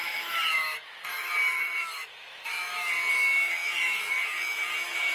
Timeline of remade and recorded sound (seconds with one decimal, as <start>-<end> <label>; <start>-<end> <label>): 0.0-5.1 remade